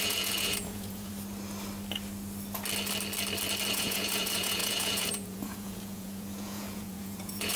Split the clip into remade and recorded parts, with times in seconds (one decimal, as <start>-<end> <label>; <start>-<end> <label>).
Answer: 0.0-1.1 remade; 1.1-3.7 recorded; 3.7-7.6 remade